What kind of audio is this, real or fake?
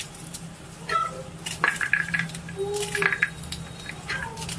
real